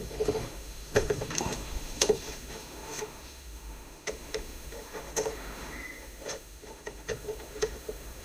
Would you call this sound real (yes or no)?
no